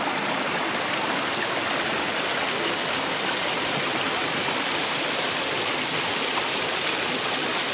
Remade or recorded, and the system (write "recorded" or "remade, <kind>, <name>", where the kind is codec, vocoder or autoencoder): recorded